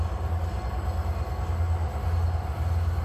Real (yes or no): yes